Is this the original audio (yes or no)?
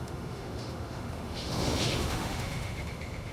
no